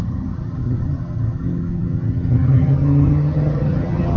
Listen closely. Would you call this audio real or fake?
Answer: fake